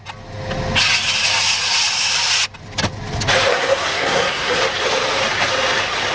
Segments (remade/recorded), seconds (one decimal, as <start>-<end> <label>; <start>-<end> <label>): 0.0-3.5 recorded; 3.5-4.6 remade; 4.6-6.1 recorded